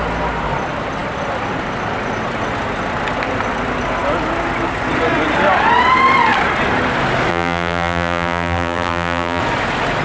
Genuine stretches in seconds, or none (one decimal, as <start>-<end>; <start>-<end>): 0.0-7.3; 9.4-10.0